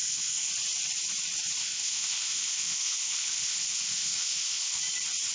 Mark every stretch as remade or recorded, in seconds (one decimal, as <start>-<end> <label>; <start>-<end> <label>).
0.0-0.5 remade; 0.5-1.6 recorded; 1.6-4.8 remade; 4.8-5.3 recorded